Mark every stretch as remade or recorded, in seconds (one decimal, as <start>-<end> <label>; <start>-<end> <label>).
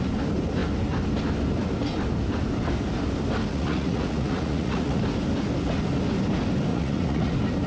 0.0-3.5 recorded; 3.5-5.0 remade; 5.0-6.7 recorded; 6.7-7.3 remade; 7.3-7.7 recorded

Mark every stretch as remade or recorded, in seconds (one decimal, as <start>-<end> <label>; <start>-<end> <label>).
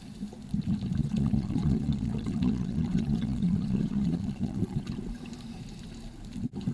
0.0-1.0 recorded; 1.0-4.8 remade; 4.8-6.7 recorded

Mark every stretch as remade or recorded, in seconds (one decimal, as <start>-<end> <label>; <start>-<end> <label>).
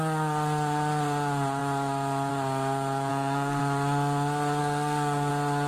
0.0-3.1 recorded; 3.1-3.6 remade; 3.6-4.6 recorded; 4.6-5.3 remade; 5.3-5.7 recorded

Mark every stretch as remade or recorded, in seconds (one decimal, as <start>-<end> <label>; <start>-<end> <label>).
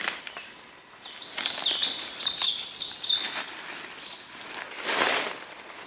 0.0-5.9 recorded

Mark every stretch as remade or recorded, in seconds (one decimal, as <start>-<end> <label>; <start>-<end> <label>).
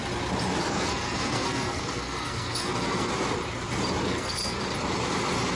0.0-0.6 recorded; 0.6-3.1 remade; 3.1-4.0 recorded; 4.0-4.6 remade; 4.6-5.5 recorded